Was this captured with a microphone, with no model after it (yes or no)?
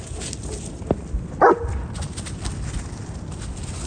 yes